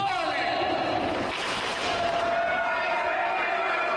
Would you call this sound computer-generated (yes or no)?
no